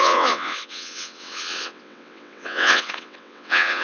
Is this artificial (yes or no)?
yes